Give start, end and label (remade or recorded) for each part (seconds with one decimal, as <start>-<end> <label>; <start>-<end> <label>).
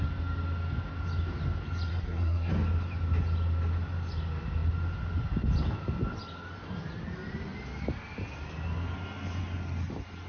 0.0-1.9 recorded; 1.9-2.5 remade; 2.5-10.3 recorded